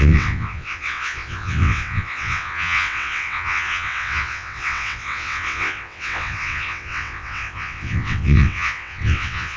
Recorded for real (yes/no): no